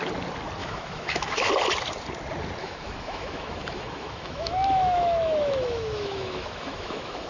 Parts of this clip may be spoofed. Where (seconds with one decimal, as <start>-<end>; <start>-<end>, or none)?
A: 0.6-1.5; 2.6-7.3